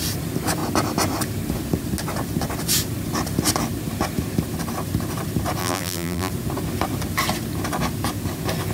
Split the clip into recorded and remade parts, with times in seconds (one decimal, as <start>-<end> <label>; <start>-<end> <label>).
0.0-5.6 recorded; 5.6-6.3 remade; 6.3-8.7 recorded